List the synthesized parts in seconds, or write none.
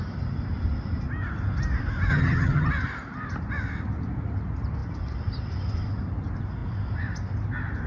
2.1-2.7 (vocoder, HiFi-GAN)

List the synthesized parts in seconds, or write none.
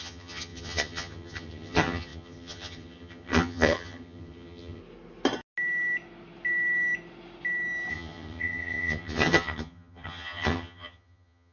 0.0-4.8 (vocoder, HiFi-GAN); 7.9-11.5